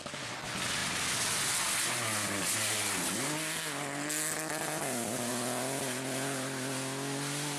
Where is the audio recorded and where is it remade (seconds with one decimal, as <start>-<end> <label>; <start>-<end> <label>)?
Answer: 0.0-7.6 recorded